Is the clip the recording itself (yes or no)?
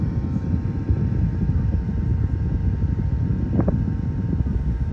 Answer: yes